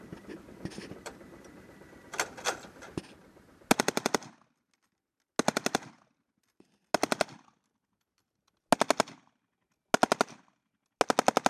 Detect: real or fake real